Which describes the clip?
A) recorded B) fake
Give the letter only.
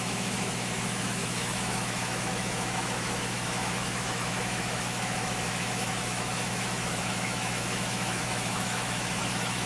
B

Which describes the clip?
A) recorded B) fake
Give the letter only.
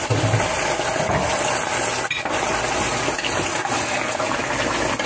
A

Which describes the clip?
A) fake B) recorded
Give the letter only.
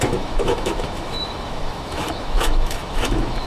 A